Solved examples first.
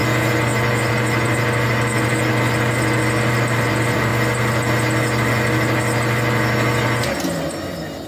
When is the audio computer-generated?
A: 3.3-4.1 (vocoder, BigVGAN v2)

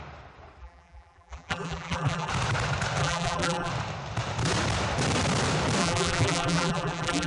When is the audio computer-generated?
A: 0.6-2.3 (vocoder, BigVGAN v2); 3.0-3.7; 5.8-7.3

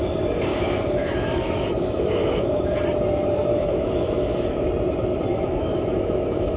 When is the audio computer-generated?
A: 0.5-2.8 (autoencoder, DAC-VAE); 3.5-4.7; 5.3-6.6

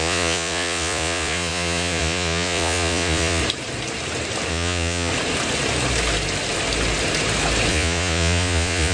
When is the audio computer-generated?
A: 0.0-3.4 (vocoder, Vocos); 4.5-5.1; 7.7-8.9

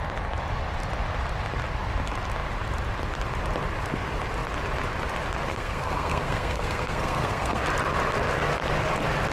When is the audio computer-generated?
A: 5.5-7.6 (codec, SNAC)

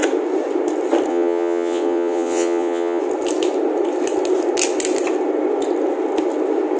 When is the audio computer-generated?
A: 1.1-3.0 (vocoder, WaveNeXt)

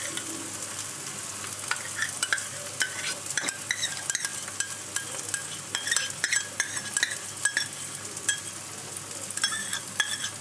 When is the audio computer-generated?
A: none